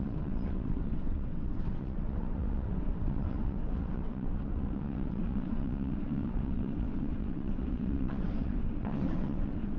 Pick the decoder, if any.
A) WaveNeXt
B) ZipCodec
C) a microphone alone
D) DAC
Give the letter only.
A